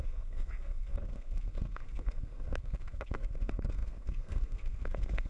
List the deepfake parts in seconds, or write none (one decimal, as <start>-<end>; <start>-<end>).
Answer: 0.0-5.3

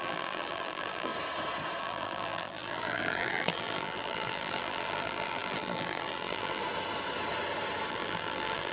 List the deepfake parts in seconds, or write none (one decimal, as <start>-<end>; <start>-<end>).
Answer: 0.0-1.1; 1.8-6.6; 7.9-8.7

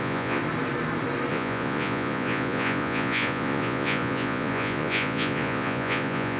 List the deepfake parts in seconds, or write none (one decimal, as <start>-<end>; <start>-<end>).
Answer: 0.0-0.4; 1.3-6.4

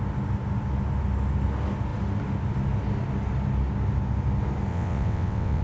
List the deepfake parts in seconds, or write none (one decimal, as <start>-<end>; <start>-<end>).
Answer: 4.7-5.6

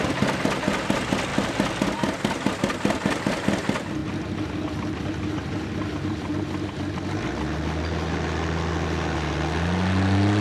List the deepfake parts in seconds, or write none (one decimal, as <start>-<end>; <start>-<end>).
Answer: none

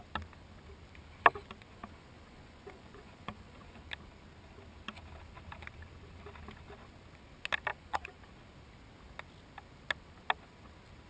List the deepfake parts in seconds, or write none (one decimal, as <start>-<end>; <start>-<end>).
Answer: 1.7-3.8; 7.7-8.2